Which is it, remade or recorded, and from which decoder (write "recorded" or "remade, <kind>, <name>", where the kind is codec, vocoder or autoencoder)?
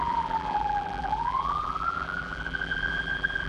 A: remade, vocoder, BigVGAN v2